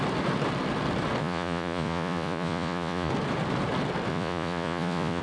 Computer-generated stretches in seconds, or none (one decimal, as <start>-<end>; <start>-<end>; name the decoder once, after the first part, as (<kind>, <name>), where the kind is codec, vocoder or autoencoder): 1.2-3.1 (vocoder, Vocos); 4.1-5.2